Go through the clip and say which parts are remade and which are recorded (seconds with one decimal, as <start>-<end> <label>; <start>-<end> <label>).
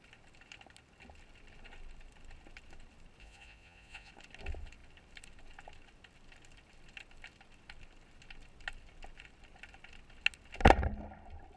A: 0.0-3.2 recorded; 3.2-4.1 remade; 4.1-11.6 recorded